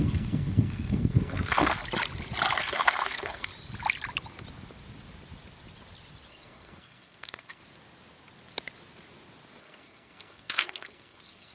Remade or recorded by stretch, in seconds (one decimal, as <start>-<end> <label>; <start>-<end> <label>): 0.0-1.8 remade; 1.8-2.6 recorded; 2.6-3.5 remade; 3.5-6.3 recorded; 6.3-7.6 remade; 7.6-9.6 recorded; 9.6-11.5 remade